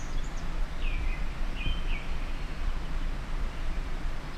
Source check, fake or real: real